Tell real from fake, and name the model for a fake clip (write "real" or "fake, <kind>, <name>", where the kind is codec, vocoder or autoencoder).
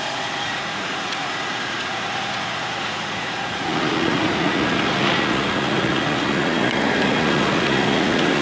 fake, vocoder, Vocos